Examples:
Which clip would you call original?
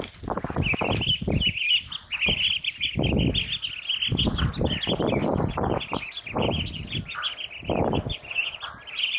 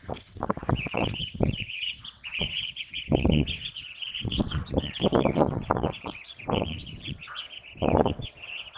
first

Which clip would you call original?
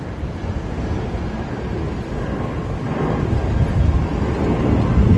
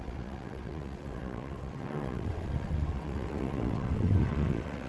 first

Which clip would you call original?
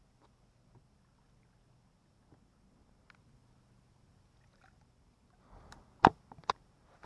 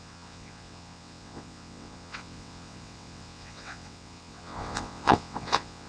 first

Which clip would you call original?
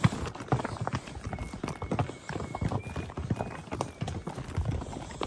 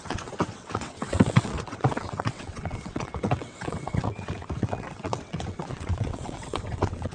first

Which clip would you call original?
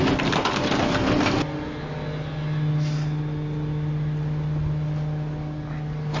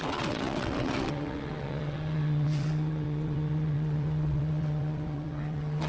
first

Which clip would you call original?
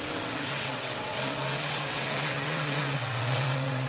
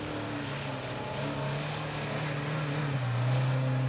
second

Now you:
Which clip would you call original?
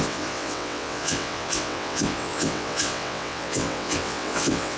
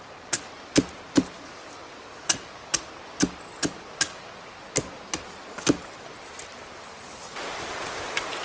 second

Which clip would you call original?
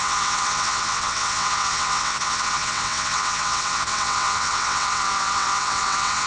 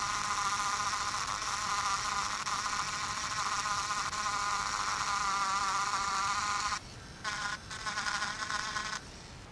second